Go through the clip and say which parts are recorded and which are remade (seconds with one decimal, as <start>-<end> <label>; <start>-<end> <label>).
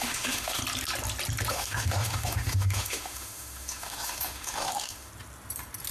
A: 0.0-0.6 remade; 0.6-1.5 recorded; 1.5-5.1 remade; 5.1-5.9 recorded